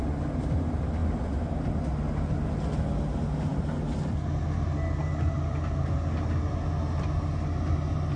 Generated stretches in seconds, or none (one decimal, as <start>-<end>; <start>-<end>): none